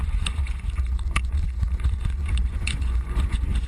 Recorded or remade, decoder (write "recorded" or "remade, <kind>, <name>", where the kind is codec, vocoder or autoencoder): remade, vocoder, Vocos